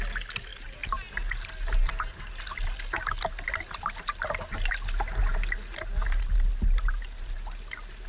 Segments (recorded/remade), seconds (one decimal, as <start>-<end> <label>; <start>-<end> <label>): 0.0-8.1 recorded